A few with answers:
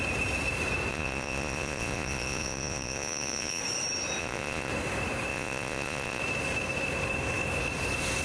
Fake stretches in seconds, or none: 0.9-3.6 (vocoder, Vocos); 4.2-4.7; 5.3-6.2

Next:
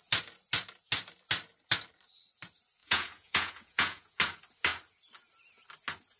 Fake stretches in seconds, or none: 2.8-4.2 (vocoder, Vocos)

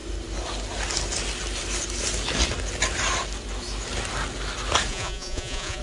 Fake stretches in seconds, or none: 4.9-5.8 (vocoder, Vocos)

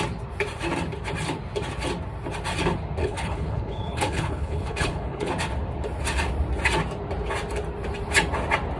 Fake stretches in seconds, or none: 3.0-5.3 (codec, HILCodec)

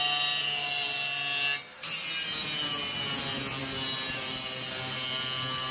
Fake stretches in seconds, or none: none

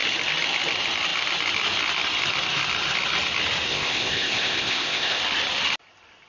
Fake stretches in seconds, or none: 3.7-5.2 (codec, ZipCodec)